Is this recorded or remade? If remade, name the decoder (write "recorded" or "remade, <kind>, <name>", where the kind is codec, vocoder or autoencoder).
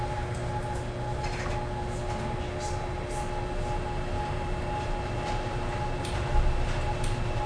recorded